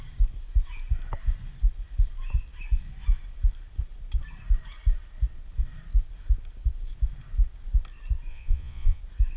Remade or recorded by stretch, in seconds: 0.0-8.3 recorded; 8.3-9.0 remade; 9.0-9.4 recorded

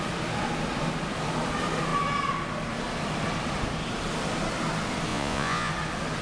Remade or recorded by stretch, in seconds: 0.0-5.1 recorded; 5.1-5.7 remade; 5.7-6.2 recorded

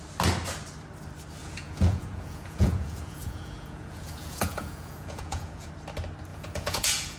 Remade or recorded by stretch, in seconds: 0.0-1.4 recorded; 1.4-5.7 remade; 5.7-6.3 recorded; 6.3-7.2 remade

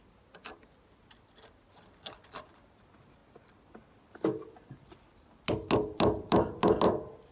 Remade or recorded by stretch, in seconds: 0.0-7.3 recorded